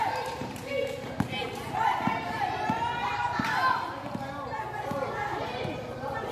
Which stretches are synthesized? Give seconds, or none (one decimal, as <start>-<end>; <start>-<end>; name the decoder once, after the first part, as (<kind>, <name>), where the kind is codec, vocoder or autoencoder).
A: 0.0-0.7 (vocoder, BigVGAN v2); 2.1-3.6; 5.2-6.3